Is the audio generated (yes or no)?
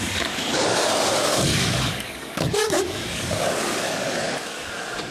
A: yes